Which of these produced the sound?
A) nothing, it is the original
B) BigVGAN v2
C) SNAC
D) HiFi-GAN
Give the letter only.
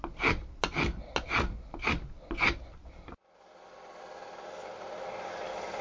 A